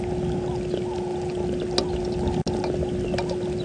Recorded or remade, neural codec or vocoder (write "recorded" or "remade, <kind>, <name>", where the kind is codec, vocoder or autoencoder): recorded